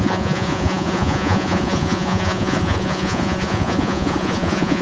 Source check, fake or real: fake